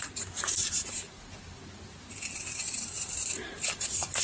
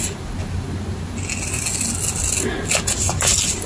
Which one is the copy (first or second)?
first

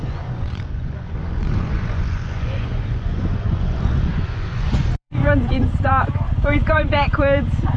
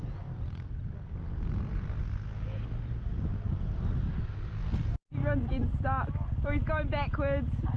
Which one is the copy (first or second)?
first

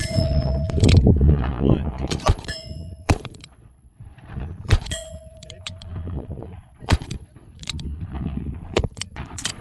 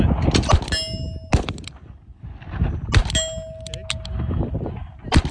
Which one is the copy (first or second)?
first